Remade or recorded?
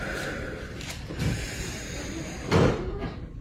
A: remade